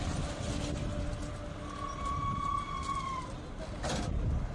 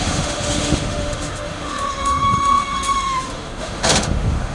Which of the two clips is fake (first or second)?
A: second